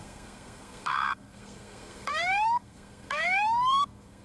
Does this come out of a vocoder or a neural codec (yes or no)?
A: yes